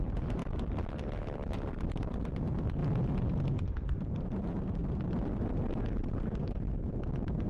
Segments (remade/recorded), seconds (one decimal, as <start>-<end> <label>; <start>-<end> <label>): 0.0-0.4 remade; 0.4-1.1 recorded; 1.1-2.8 remade; 2.8-3.4 recorded; 3.4-4.8 remade; 4.8-5.3 recorded; 5.3-7.5 remade